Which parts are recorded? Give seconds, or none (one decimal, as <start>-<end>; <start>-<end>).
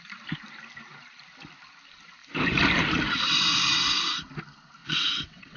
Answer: 0.0-4.8